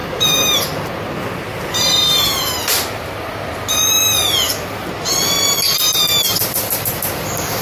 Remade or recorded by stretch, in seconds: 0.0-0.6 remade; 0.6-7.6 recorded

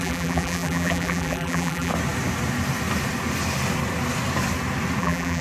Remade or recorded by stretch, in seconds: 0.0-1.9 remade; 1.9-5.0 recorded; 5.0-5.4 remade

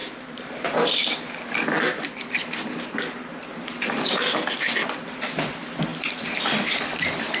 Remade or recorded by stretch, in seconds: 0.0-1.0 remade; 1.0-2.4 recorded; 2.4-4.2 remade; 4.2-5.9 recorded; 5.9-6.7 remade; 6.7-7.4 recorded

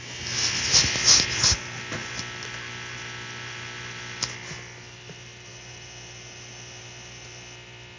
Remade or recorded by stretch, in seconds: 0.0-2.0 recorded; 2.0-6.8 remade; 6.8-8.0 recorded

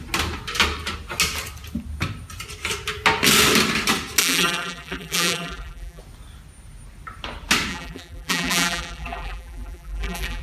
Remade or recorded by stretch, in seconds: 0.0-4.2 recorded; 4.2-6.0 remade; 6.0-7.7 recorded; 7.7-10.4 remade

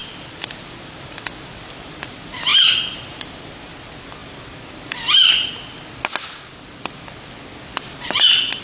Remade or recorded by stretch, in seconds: 0.0-0.8 remade; 0.8-2.5 recorded; 2.5-3.3 remade; 3.3-7.7 recorded; 7.7-8.2 remade; 8.2-8.6 recorded

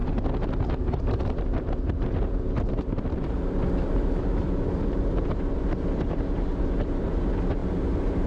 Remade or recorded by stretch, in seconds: 0.0-8.3 remade